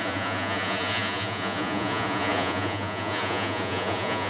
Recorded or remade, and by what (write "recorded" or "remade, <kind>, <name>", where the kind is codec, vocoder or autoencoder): remade, vocoder, Vocos